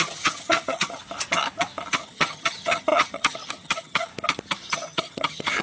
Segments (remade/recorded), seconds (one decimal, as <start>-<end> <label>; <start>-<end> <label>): 0.0-1.0 remade; 1.0-1.9 recorded; 1.9-4.1 remade; 4.1-4.7 recorded; 4.7-5.6 remade